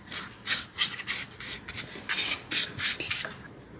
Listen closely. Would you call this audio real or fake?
real